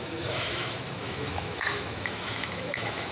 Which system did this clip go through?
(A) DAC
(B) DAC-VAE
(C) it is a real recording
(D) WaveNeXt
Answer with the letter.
B